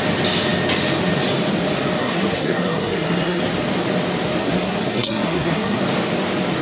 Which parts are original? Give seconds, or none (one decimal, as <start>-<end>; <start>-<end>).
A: 0.0-2.0; 3.4-4.4; 5.8-6.6